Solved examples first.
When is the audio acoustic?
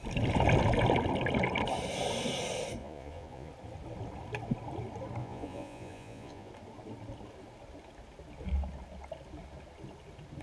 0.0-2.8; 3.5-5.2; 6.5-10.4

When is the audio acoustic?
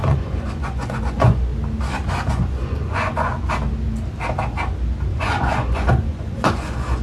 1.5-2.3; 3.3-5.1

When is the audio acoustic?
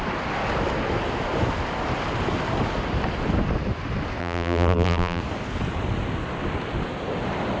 0.0-4.2; 5.2-7.6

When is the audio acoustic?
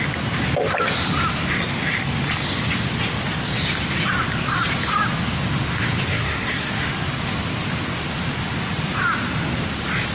0.0-6.1; 6.7-10.1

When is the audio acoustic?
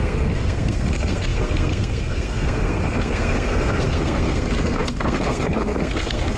none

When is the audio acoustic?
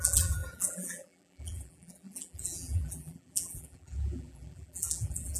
none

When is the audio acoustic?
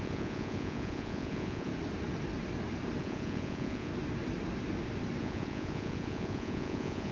1.7-3.0; 3.9-5.2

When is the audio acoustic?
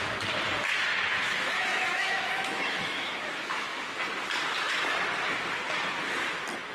0.0-1.1; 4.0-6.7